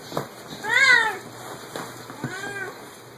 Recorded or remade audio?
recorded